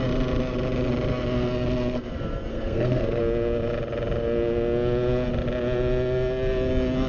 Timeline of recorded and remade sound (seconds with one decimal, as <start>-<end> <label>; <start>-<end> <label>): 0.0-2.5 recorded; 2.5-3.2 remade; 3.2-7.1 recorded